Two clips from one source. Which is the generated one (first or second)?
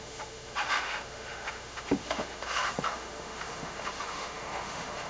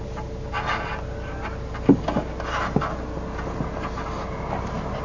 first